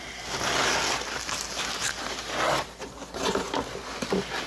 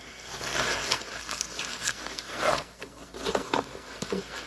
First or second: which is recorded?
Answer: first